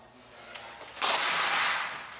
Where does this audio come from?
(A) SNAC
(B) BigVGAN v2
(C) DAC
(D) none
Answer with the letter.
D